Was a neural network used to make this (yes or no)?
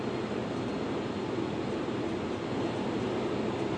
no